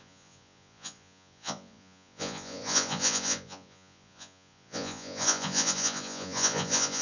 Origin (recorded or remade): remade